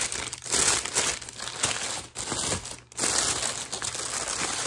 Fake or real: real